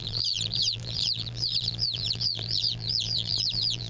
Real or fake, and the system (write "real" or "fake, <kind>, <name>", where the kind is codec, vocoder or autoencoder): fake, vocoder, BigVGAN v2